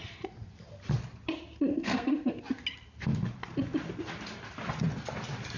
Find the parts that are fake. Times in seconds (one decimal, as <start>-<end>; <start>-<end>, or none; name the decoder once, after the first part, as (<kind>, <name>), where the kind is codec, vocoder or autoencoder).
1.7-2.4 (codec, SNAC)